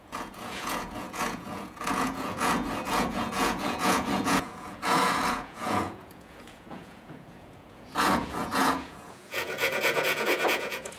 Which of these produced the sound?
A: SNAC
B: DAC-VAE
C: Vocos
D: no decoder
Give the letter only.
C